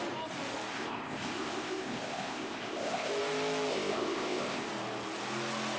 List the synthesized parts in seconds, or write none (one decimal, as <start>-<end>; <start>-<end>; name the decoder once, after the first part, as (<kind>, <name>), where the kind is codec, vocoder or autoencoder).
0.7-3.1 (codec, ZipCodec); 3.7-4.7